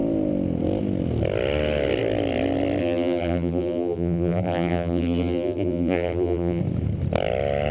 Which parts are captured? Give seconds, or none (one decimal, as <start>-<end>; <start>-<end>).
0.0-2.8; 6.6-7.7